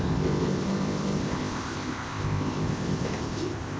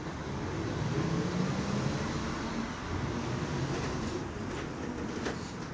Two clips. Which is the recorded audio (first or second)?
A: second